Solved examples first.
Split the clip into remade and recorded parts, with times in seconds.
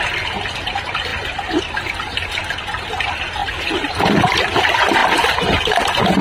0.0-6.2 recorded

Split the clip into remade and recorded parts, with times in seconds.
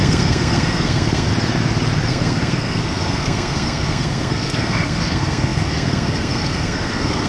0.0-1.3 remade; 1.3-2.1 recorded; 2.1-7.3 remade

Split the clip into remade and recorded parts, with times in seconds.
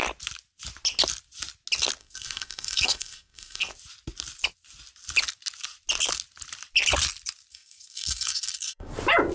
0.0-2.0 recorded; 2.0-3.7 remade; 3.7-7.5 recorded; 7.5-8.9 remade; 8.9-9.3 recorded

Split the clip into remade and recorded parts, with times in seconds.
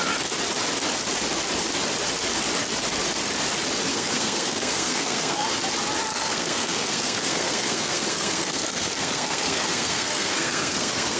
0.0-3.9 recorded; 3.9-5.6 remade; 5.6-6.1 recorded; 6.1-11.2 remade